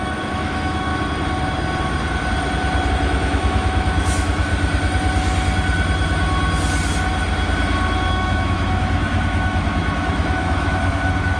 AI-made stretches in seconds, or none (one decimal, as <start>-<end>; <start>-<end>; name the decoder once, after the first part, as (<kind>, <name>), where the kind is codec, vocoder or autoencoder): 0.0-0.9 (autoencoder, DAC-VAE); 2.9-4.5; 8.1-11.4